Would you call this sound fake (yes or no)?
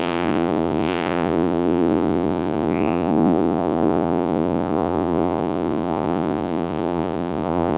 yes